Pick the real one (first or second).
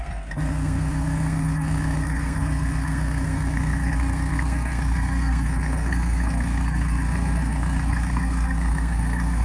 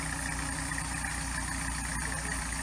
second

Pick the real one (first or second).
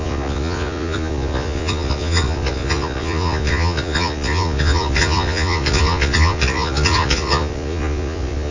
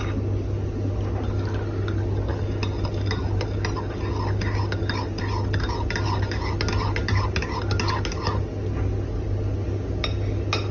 second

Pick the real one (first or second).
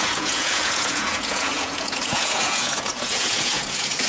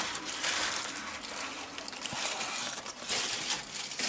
second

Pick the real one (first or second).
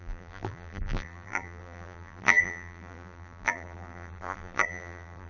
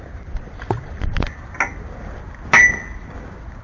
second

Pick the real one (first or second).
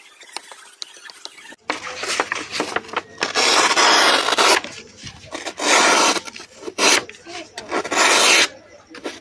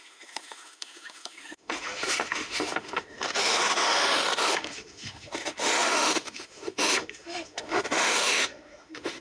first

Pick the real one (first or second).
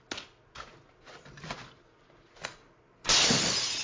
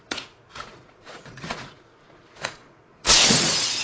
first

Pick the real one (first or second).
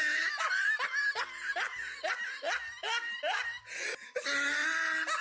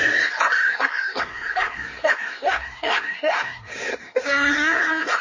first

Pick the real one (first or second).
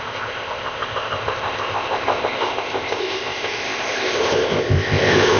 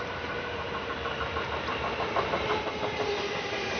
second